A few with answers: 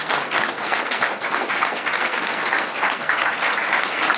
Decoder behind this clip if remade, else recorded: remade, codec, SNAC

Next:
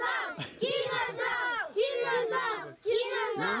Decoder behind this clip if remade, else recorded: recorded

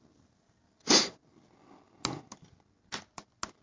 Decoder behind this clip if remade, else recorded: recorded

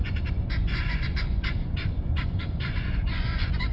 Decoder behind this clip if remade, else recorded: remade, vocoder, Vocos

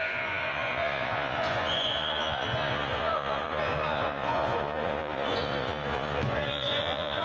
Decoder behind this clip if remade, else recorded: remade, vocoder, Vocos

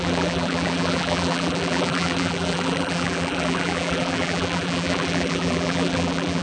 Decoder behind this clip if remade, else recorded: remade, vocoder, BigVGAN v2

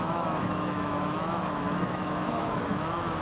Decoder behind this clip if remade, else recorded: remade, autoencoder, DAC-VAE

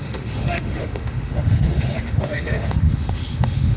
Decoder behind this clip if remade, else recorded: remade, autoencoder, DAC-VAE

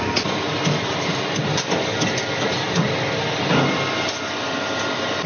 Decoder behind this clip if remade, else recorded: recorded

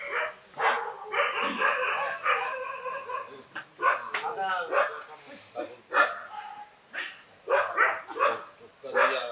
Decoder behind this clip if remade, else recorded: recorded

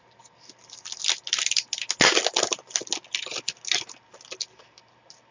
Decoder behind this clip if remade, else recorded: recorded